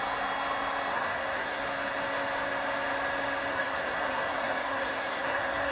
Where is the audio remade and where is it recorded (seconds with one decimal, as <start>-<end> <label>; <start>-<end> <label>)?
0.0-0.9 recorded; 0.9-1.6 remade; 1.6-3.5 recorded; 3.5-5.7 remade